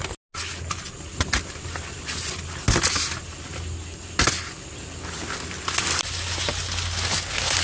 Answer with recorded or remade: recorded